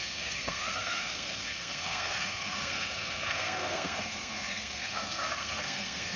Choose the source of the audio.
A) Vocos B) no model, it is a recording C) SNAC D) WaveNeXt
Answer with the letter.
C